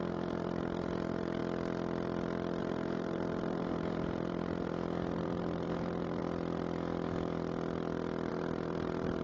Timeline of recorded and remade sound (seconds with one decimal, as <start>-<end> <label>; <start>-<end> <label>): 0.0-1.4 remade; 1.4-2.6 recorded; 2.6-6.2 remade; 6.2-8.3 recorded; 8.3-9.2 remade